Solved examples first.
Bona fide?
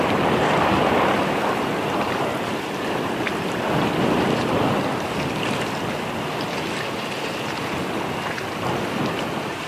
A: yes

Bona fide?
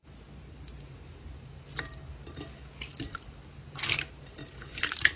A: yes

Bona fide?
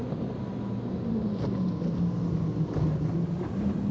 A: yes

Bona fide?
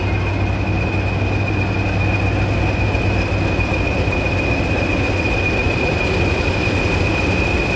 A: yes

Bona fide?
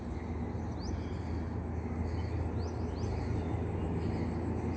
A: yes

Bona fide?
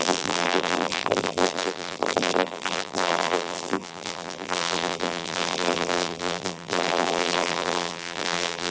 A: no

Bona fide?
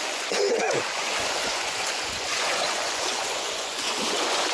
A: no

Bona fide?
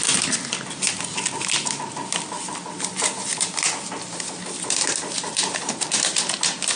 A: yes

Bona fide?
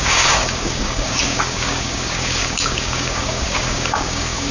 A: no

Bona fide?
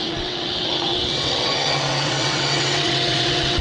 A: no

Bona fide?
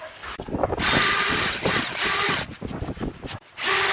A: yes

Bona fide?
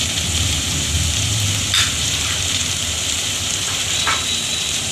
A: no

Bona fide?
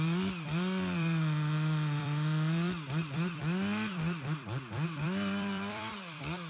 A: no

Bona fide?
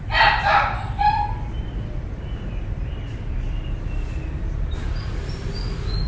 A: yes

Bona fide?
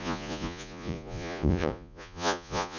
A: no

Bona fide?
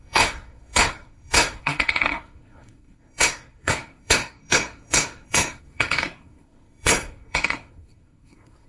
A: no